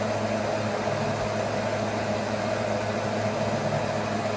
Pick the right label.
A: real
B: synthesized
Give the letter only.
A